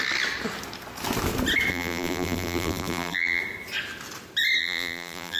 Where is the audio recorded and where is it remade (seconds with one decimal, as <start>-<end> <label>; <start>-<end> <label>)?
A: 0.0-1.7 recorded; 1.7-3.4 remade; 3.4-4.6 recorded; 4.6-5.4 remade